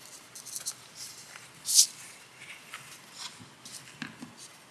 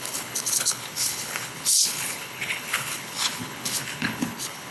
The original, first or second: first